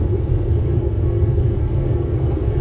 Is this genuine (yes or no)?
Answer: no